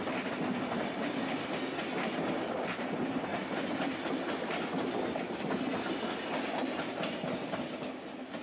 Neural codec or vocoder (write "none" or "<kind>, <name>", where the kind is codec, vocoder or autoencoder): none